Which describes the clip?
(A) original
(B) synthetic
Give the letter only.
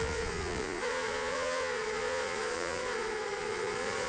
B